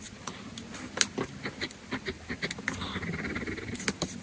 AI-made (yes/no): no